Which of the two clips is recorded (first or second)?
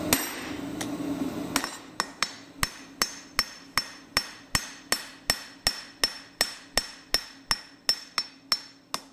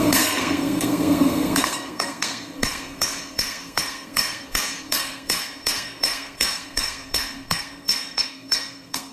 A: first